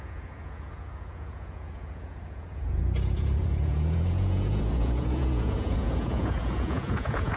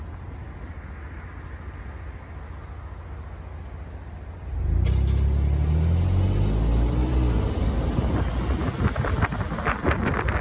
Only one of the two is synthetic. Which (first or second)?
first